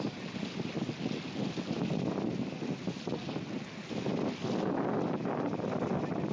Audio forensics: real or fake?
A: real